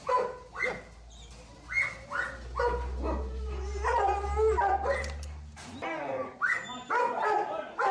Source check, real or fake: real